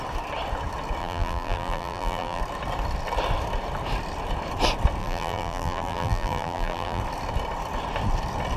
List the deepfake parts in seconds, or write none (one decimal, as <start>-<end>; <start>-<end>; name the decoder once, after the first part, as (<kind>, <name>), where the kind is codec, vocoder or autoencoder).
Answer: 1.0-2.4 (vocoder, BigVGAN v2); 5.0-7.0